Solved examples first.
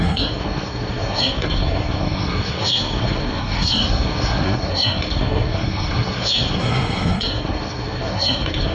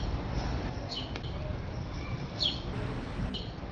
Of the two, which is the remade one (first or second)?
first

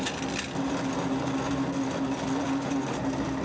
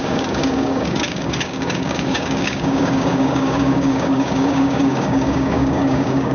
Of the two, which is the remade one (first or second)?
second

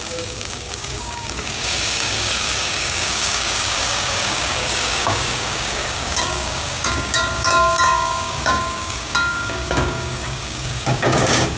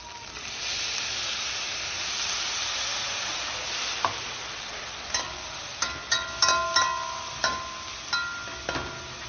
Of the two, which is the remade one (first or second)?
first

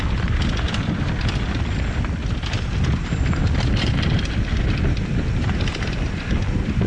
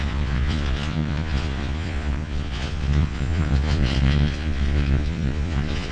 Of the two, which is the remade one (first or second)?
second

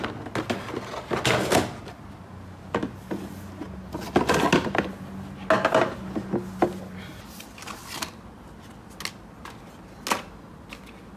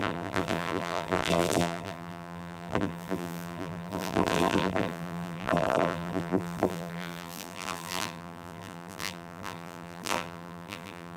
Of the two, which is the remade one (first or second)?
second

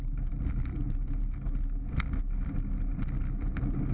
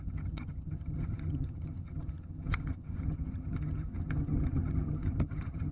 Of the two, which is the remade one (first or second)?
second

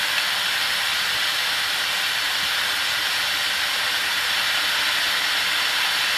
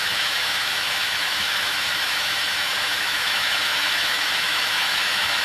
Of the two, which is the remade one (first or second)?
second